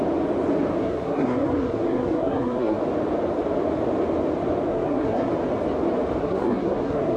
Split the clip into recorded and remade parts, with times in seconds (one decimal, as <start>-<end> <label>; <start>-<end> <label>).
0.0-0.8 recorded; 0.8-2.8 remade; 2.8-4.7 recorded; 4.7-5.3 remade; 5.3-6.2 recorded; 6.2-7.2 remade